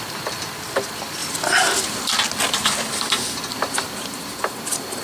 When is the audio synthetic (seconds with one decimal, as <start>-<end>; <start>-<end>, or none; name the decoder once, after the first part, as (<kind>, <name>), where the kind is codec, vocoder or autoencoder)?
none